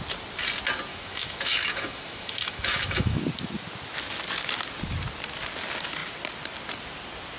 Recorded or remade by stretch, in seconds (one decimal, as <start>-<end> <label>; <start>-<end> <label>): 0.0-0.9 recorded; 0.9-3.2 remade; 3.2-7.4 recorded